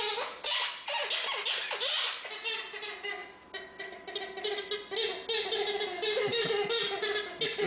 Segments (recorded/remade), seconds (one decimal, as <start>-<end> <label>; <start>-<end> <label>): 0.0-7.7 recorded

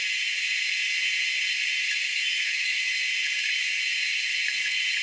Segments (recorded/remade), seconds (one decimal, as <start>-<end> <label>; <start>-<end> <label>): 0.0-2.1 recorded; 2.1-3.0 remade; 3.0-5.0 recorded

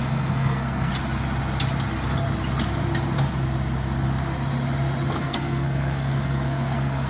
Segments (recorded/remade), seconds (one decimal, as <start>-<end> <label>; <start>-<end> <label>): 0.0-0.9 remade; 0.9-5.2 recorded; 5.2-7.1 remade

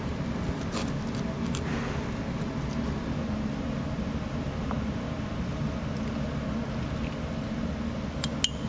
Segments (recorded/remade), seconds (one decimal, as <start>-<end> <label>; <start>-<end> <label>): 0.0-8.7 recorded

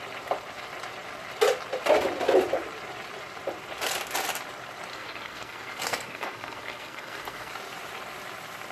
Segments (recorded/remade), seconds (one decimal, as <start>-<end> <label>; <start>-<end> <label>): 0.0-4.9 recorded; 4.9-7.5 remade; 7.5-8.7 recorded